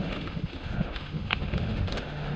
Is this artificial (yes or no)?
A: yes